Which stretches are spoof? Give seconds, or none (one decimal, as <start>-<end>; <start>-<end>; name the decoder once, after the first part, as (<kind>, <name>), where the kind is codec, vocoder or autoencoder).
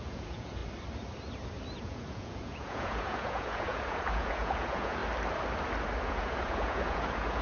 0.0-0.6 (vocoder, Vocos); 1.8-5.0; 6.0-7.4